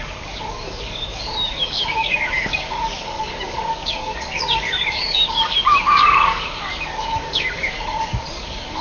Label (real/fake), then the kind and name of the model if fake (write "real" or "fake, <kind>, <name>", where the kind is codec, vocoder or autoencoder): fake, codec, DAC